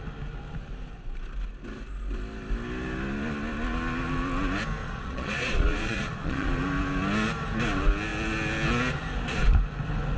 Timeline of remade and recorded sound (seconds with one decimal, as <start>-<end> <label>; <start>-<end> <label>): 0.0-4.8 recorded; 4.8-6.5 remade; 6.5-10.2 recorded